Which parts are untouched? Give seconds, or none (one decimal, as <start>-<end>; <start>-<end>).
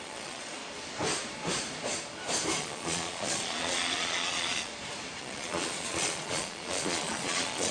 0.6-2.6; 4.7-5.2